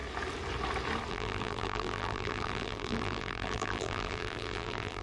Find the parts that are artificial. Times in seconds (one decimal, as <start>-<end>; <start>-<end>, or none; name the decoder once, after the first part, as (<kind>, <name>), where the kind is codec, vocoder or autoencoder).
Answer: 1.1-5.0 (vocoder, BigVGAN v2)